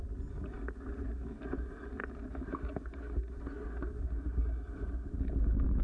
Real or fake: real